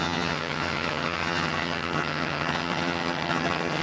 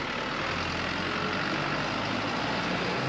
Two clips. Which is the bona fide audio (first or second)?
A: second